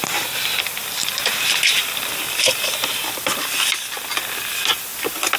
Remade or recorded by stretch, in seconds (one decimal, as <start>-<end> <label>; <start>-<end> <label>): 0.0-0.8 recorded; 0.8-4.0 remade; 4.0-5.4 recorded